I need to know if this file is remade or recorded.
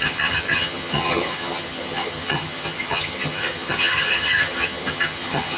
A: remade